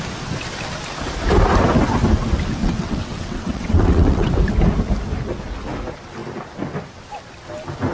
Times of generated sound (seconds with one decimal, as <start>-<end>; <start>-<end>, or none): 2.6-4.3